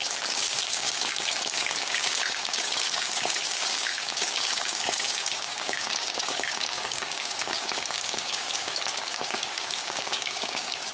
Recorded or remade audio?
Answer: remade